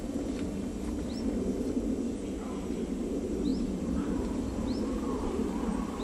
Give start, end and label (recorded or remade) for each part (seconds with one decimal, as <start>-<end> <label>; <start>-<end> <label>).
0.0-6.0 recorded